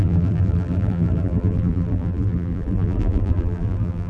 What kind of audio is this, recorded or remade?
remade